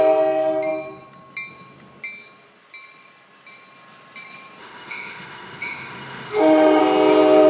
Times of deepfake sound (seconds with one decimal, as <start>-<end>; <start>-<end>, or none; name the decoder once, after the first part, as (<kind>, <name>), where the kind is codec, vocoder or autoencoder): 4.6-6.8 (autoencoder, DAC-VAE)